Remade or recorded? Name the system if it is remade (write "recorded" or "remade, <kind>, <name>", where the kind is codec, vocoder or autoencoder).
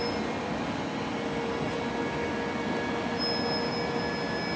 recorded